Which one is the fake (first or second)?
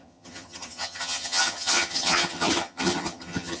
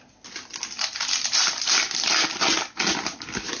first